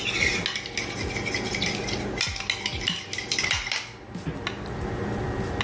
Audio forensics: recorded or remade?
recorded